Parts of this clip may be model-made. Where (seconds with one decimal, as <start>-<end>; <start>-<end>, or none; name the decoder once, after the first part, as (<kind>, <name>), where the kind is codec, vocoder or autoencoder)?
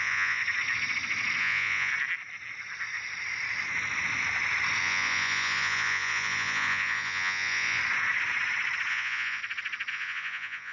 0.0-0.4 (vocoder, Vocos); 1.4-1.9; 4.8-7.8; 8.9-9.4; 9.9-10.7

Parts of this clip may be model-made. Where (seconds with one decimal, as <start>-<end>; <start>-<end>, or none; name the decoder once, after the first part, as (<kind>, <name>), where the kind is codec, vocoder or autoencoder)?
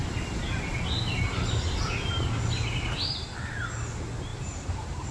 4.3-5.1 (vocoder, BigVGAN v2)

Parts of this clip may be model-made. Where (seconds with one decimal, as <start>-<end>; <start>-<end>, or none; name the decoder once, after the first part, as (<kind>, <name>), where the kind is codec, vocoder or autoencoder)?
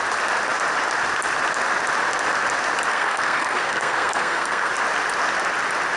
2.9-4.7 (codec, SNAC)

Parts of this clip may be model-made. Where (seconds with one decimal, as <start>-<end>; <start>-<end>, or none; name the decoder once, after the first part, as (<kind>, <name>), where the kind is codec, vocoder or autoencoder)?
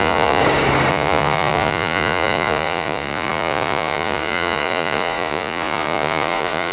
0.0-0.4 (vocoder, Vocos); 0.9-6.7